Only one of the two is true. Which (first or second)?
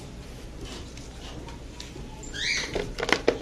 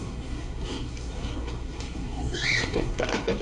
first